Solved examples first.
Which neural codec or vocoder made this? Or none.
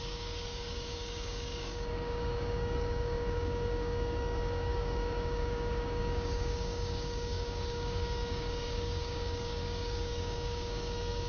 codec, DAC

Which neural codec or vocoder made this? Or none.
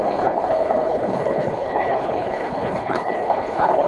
codec, HILCodec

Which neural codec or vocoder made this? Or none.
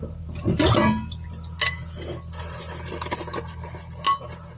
none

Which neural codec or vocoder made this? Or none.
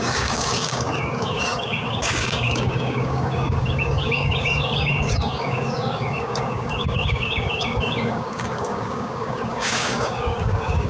codec, DAC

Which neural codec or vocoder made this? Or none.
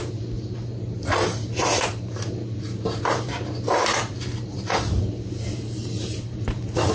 vocoder, BigVGAN v2